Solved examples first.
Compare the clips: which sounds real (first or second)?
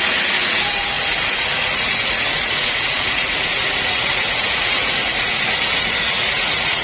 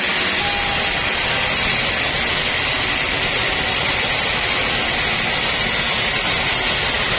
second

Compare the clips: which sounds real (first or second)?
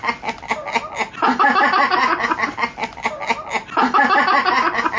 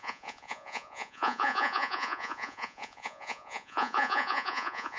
first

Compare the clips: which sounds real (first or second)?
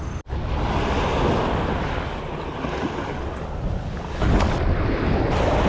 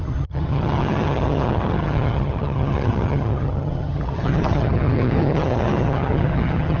first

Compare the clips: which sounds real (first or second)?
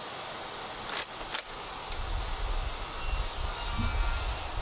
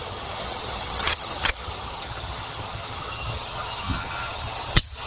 first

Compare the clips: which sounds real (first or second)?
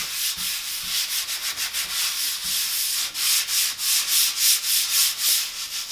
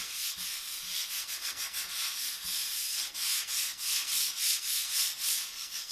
first